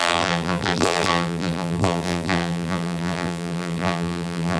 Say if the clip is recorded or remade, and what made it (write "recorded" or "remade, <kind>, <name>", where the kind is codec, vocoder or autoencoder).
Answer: remade, vocoder, BigVGAN v2